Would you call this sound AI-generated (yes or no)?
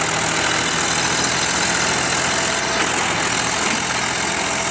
no